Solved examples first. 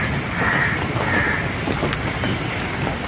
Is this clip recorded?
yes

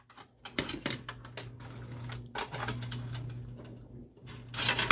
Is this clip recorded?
yes